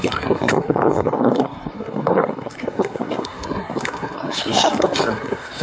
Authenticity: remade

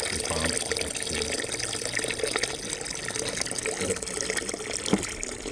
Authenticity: recorded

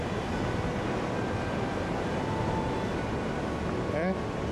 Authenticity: recorded